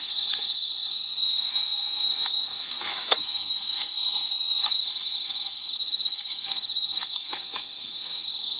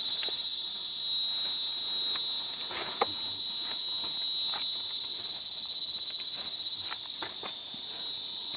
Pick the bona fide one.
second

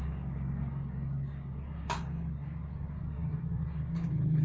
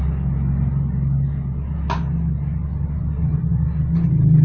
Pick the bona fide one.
second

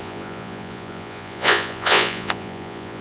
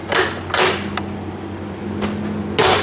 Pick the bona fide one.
second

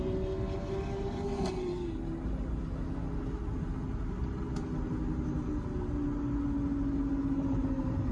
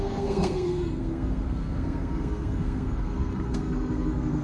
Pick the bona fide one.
first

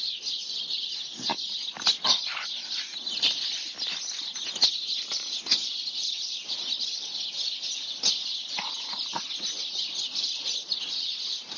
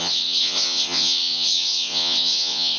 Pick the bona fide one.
first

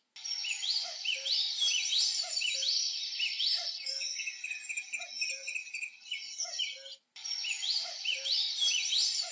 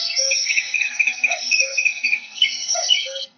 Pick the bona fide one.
first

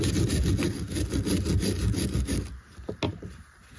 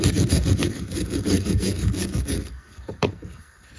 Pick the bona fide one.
first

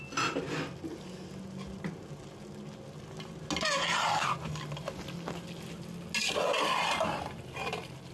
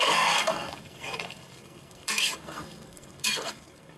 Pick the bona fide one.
first